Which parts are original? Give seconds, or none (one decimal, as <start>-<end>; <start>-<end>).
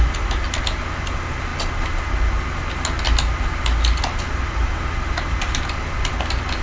0.0-6.6